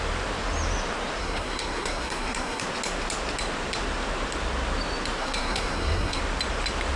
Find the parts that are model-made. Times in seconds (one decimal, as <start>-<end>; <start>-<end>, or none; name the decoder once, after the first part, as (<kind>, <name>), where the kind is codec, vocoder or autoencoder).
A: 1.2-2.6 (codec, SNAC); 5.2-6.2